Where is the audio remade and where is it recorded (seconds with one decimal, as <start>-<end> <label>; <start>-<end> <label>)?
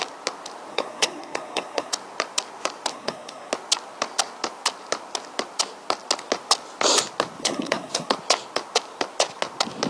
0.0-0.7 recorded; 0.7-1.9 remade; 1.9-2.9 recorded; 2.9-3.5 remade; 3.5-7.4 recorded; 7.4-8.1 remade; 8.1-9.9 recorded